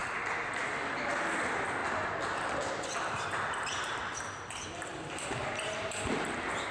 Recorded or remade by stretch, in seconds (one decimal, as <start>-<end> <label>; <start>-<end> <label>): 0.0-6.7 recorded